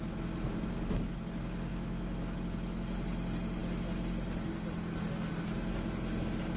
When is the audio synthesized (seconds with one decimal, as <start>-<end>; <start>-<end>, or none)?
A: 1.7-2.4